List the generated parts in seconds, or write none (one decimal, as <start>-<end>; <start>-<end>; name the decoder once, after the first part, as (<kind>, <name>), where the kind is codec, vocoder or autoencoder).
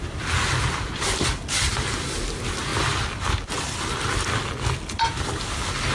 none